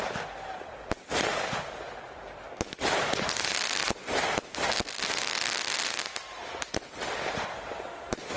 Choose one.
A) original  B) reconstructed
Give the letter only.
A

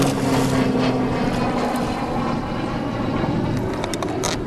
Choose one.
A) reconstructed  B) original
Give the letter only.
B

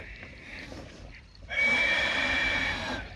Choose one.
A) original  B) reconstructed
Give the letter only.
B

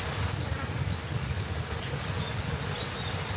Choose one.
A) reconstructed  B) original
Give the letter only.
B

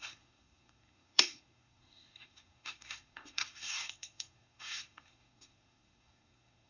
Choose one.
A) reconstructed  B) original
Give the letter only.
A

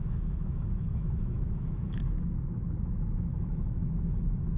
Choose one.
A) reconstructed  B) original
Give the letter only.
A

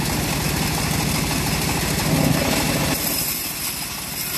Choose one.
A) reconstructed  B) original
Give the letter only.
B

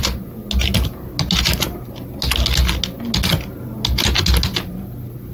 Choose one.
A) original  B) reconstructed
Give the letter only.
A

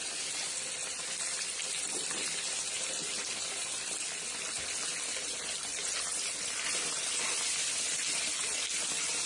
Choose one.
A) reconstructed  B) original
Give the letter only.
A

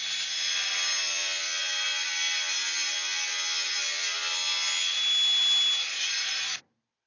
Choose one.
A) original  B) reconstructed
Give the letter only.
A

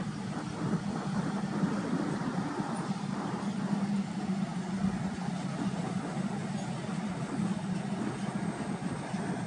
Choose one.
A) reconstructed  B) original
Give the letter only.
B